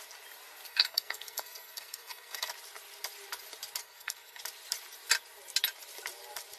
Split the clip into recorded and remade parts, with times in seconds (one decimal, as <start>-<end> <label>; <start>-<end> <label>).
0.0-0.7 recorded; 0.7-2.5 remade; 2.5-3.8 recorded; 3.8-4.4 remade; 4.4-6.6 recorded